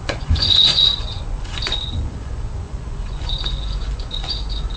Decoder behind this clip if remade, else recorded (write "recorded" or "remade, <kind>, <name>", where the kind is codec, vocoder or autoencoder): remade, vocoder, Vocos